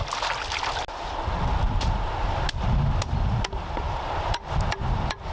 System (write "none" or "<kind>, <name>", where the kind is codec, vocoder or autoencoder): none